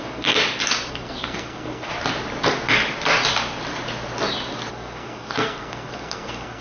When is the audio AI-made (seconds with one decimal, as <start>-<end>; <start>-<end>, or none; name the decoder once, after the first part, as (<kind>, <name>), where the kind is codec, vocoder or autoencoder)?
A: 0.0-0.4 (codec, SNAC); 0.9-1.9; 4.7-6.6